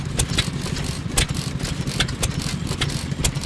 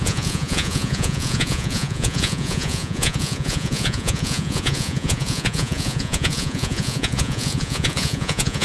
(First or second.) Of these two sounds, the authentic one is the first